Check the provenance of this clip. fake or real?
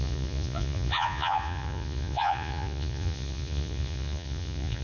fake